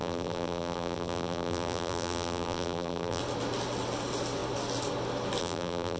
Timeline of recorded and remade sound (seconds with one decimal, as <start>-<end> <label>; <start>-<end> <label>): 0.0-3.2 remade; 3.2-5.4 recorded; 5.4-6.0 remade